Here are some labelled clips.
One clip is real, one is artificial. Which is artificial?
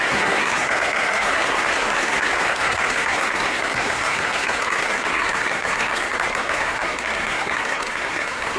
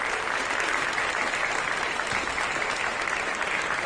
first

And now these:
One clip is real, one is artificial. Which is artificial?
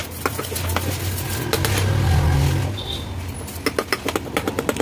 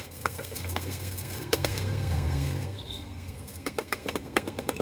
second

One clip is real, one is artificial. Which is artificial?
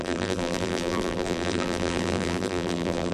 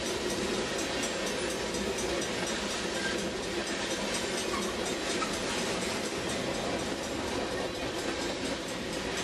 first